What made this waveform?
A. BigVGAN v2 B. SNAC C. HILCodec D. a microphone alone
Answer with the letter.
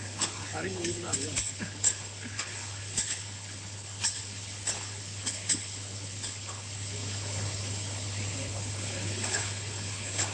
C